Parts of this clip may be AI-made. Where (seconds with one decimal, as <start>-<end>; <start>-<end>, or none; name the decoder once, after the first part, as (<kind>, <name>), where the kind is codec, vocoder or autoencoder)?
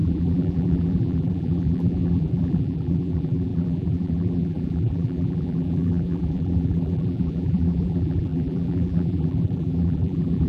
0.0-10.5 (vocoder, BigVGAN v2)